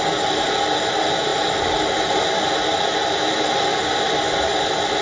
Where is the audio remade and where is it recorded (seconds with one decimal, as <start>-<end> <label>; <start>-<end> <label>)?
0.0-5.0 recorded